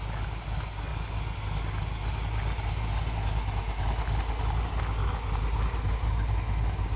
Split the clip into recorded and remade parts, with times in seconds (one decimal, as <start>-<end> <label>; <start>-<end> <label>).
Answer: 0.0-7.0 recorded